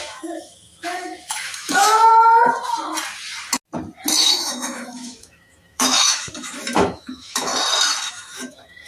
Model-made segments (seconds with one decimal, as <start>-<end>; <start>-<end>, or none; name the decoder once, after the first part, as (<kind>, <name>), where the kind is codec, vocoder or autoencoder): 0.0-2.1 (autoencoder, DAC-VAE); 4.2-7.5; 8.1-8.9